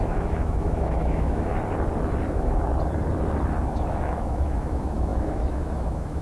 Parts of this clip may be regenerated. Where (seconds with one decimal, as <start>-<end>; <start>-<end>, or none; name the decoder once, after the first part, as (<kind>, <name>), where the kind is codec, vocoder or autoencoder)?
0.0-1.5 (autoencoder, DAC-VAE); 2.3-2.7; 3.6-6.2